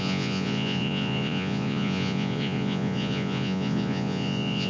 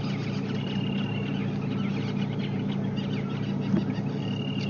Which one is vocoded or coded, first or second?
first